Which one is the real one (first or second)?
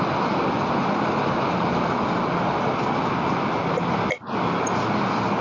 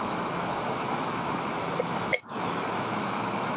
first